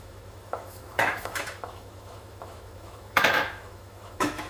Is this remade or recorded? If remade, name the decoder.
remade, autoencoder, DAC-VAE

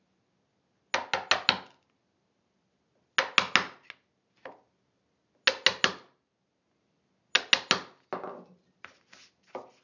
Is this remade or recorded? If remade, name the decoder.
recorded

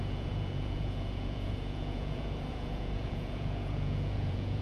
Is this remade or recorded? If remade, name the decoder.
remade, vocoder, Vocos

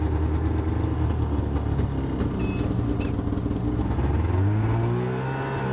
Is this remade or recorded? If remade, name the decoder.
recorded